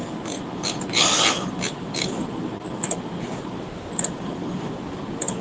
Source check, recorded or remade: recorded